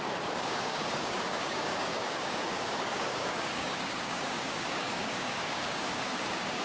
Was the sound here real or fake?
fake